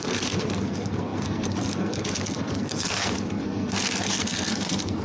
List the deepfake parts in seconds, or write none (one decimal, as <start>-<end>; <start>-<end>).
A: 0.0-5.0